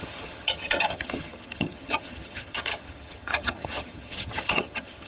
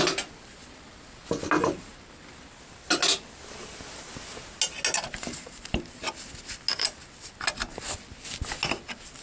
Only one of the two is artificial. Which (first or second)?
first